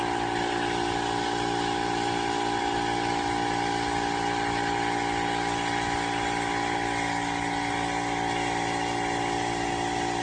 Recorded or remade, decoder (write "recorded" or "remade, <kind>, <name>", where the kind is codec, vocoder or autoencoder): recorded